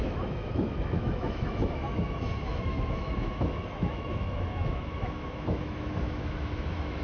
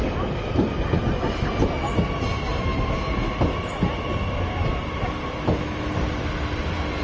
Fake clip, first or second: first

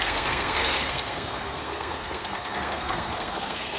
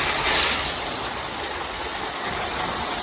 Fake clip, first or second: first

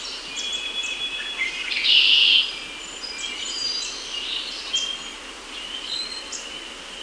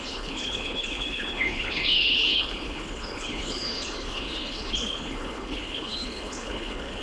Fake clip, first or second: second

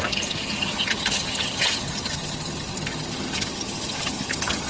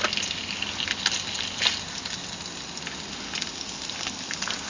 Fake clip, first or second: first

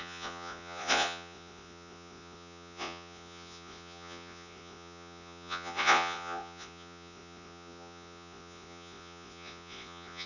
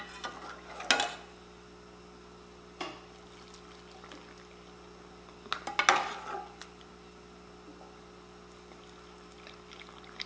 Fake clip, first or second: first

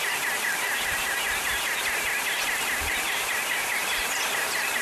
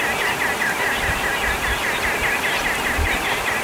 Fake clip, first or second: first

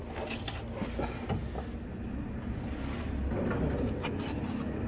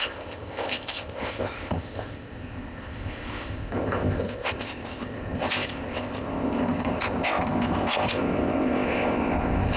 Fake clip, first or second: second